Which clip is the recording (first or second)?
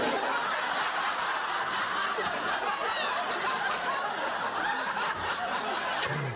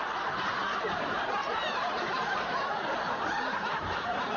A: first